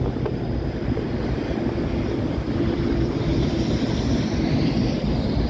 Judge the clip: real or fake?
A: real